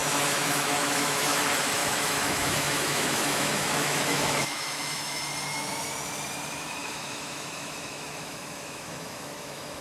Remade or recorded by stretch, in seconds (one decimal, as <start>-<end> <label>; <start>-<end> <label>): 0.0-1.4 remade; 1.4-1.8 recorded; 1.8-5.2 remade; 5.2-6.8 recorded; 6.8-9.8 remade